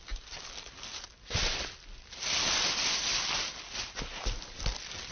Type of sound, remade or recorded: recorded